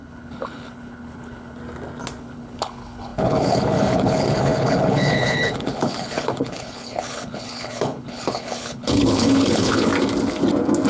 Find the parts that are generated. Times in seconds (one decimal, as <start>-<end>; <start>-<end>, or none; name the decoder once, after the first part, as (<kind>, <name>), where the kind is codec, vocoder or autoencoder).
0.0-1.6 (codec, HILCodec); 2.2-9.9